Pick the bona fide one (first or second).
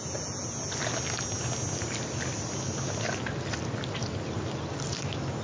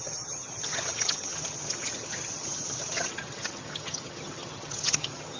first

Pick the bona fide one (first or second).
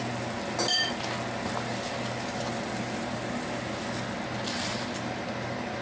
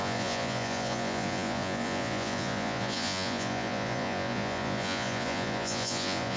first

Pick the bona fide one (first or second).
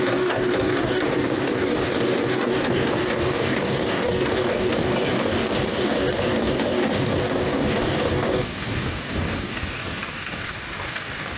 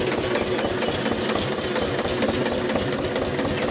second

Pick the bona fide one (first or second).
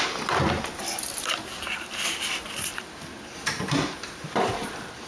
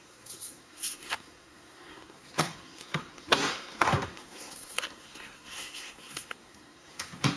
first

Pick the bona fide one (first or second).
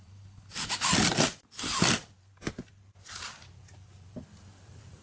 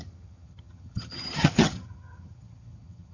first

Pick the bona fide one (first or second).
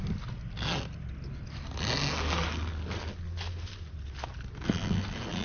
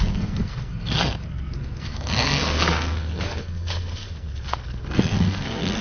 first